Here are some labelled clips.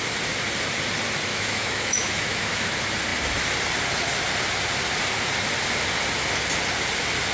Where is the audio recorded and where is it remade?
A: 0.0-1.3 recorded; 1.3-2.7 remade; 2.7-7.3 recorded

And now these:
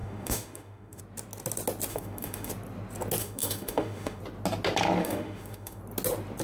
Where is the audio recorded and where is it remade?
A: 0.0-1.0 remade; 1.0-1.9 recorded; 1.9-2.5 remade; 2.5-3.2 recorded; 3.2-4.2 remade; 4.2-5.0 recorded; 5.0-5.8 remade; 5.8-6.4 recorded

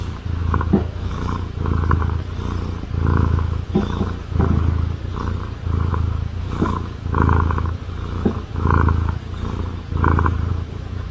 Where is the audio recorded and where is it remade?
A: 0.0-0.4 recorded; 0.4-2.2 remade; 2.2-3.1 recorded; 3.1-4.4 remade; 4.4-5.9 recorded; 5.9-9.2 remade; 9.2-10.5 recorded; 10.5-11.1 remade